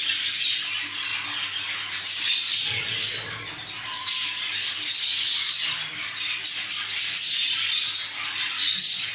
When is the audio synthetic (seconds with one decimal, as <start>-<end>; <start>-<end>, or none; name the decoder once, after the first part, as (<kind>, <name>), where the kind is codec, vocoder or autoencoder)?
none